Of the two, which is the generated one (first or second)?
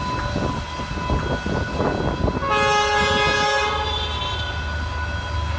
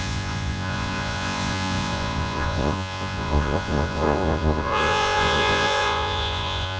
second